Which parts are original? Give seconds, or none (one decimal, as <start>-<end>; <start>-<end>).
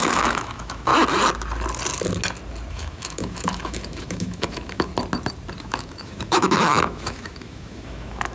0.9-2.7; 4.9-5.6